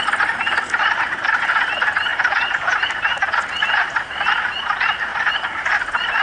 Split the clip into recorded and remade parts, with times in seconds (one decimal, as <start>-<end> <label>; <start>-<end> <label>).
0.0-6.2 recorded